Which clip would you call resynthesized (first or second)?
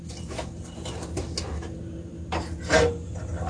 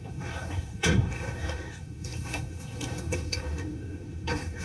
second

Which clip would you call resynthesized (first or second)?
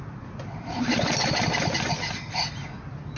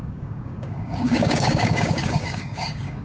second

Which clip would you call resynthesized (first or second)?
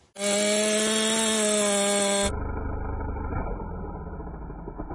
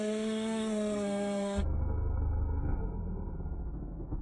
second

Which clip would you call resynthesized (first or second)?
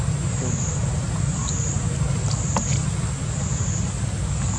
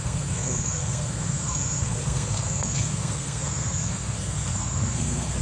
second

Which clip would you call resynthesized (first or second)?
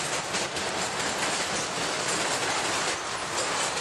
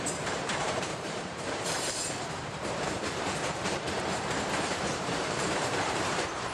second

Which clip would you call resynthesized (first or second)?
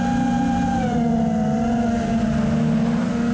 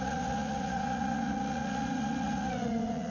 second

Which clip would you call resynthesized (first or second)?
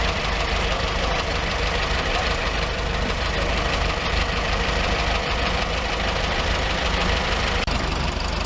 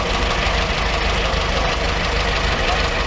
first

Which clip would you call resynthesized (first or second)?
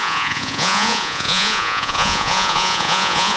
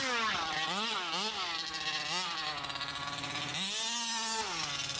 first